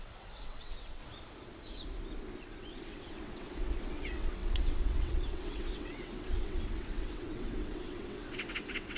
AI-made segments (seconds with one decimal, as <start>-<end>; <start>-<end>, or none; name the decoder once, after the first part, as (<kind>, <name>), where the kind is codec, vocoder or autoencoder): 0.0-1.0 (vocoder, WaveNeXt); 2.4-9.0